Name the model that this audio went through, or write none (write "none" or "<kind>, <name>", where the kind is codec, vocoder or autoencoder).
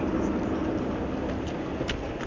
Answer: none